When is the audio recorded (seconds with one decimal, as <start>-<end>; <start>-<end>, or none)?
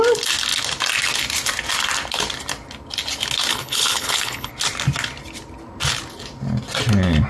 0.0-3.5; 4.5-7.3